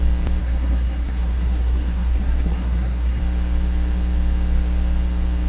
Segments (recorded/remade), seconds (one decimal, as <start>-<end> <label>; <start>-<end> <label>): 0.0-0.4 recorded; 0.4-3.2 remade; 3.2-5.5 recorded